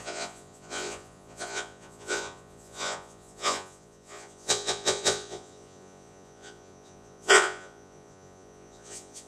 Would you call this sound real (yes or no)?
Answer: no